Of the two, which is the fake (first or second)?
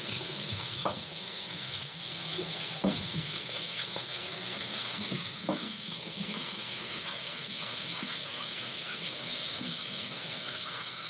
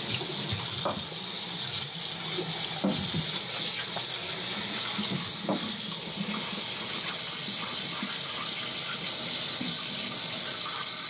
first